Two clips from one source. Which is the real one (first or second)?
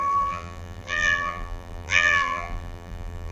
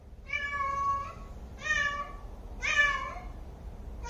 second